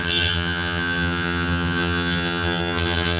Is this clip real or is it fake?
fake